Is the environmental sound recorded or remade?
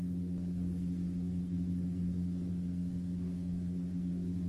remade